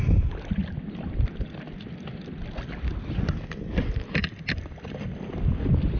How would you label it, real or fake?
real